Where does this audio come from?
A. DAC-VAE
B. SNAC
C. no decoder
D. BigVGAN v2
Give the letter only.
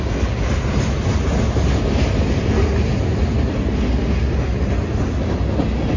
C